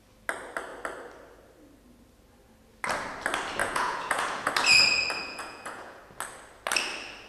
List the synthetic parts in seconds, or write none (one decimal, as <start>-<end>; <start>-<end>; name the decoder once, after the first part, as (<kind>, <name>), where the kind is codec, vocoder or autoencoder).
3.6-4.5 (vocoder, Vocos); 5.2-6.0